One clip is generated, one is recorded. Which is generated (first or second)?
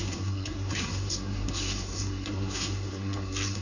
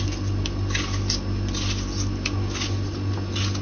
first